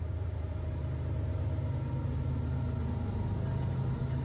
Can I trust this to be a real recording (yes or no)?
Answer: yes